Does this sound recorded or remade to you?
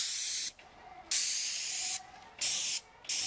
recorded